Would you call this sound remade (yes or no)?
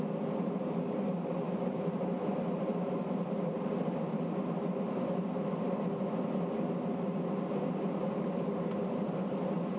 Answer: no